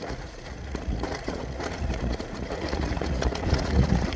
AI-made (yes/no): yes